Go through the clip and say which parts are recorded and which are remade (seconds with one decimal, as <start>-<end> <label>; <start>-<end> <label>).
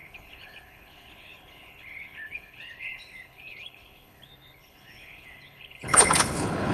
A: 0.0-6.7 remade